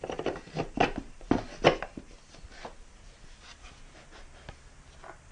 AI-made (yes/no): no